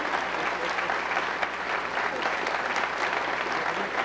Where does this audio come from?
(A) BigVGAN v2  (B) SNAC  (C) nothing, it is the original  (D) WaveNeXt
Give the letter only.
C